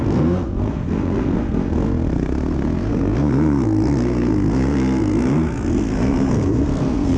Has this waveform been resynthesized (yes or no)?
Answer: yes